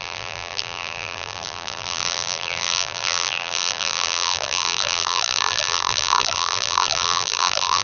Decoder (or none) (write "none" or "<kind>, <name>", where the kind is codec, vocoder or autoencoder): vocoder, BigVGAN v2